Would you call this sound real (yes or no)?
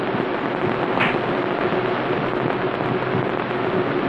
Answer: yes